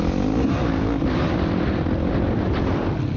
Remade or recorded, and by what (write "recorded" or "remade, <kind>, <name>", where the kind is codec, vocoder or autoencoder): recorded